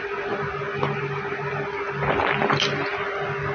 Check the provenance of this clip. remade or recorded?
recorded